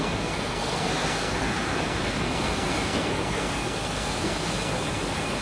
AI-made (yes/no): yes